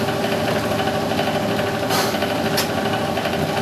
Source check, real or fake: real